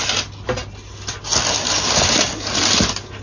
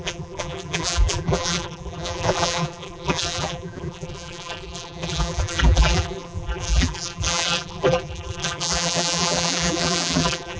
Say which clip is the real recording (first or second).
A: first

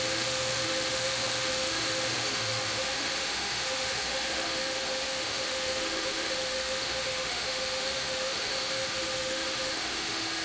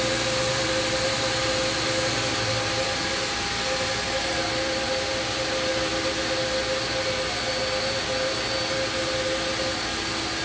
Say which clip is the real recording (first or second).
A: second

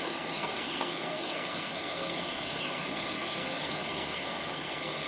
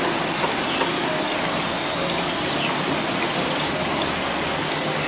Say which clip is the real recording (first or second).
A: second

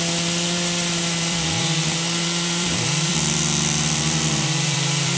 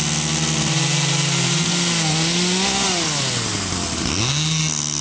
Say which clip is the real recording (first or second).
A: second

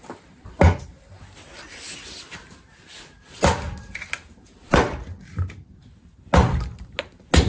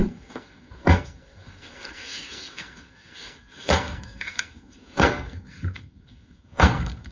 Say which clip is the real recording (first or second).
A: first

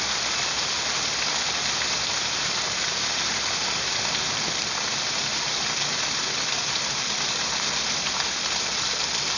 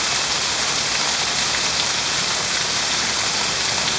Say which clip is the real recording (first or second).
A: second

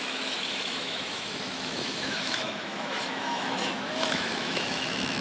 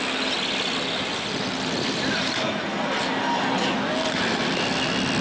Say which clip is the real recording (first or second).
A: second